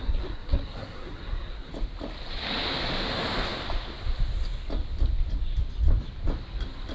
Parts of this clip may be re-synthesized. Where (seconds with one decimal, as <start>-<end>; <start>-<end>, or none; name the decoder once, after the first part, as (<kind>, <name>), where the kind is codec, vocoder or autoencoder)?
0.0-1.7 (codec, SNAC)